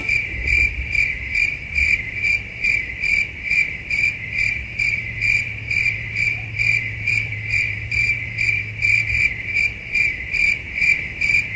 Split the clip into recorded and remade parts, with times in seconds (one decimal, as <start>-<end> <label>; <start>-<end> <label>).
0.0-11.6 remade